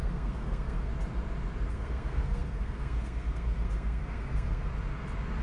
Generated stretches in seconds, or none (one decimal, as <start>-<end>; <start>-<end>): 0.0-0.9; 1.7-4.7